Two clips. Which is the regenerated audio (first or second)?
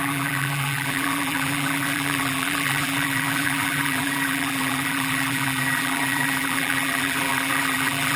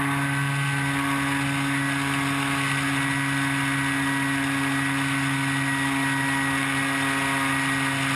first